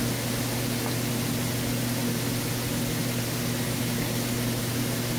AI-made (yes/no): no